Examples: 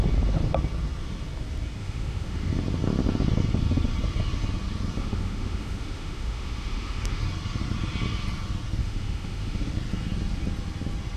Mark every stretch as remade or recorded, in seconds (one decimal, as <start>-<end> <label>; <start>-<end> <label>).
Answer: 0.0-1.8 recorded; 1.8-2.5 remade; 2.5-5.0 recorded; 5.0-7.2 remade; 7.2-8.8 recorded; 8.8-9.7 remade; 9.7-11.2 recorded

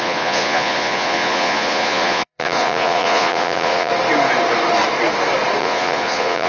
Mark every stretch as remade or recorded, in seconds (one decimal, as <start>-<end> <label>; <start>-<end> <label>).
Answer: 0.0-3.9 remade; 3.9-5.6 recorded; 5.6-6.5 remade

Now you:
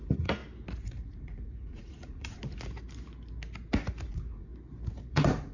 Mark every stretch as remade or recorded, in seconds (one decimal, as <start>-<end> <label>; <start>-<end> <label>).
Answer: 0.0-0.4 remade; 0.4-0.9 recorded; 0.9-2.4 remade; 2.4-4.1 recorded; 4.1-4.5 remade; 4.5-5.1 recorded; 5.1-5.5 remade

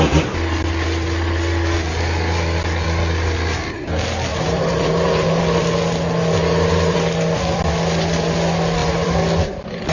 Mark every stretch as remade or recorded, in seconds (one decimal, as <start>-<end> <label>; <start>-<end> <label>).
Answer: 0.0-4.3 recorded; 4.3-5.4 remade; 5.4-9.9 recorded

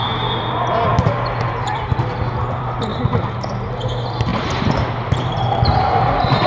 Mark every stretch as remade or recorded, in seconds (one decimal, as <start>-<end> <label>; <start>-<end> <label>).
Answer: 0.0-2.9 remade; 2.9-3.5 recorded; 3.5-6.5 remade

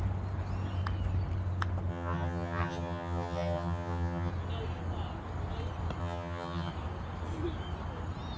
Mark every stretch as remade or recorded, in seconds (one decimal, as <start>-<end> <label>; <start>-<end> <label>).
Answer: 0.0-1.9 recorded; 1.9-4.3 remade; 4.3-6.0 recorded; 6.0-6.7 remade; 6.7-8.4 recorded

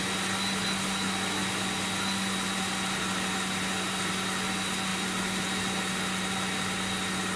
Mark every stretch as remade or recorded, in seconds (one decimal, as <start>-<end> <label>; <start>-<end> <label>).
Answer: 0.0-7.4 recorded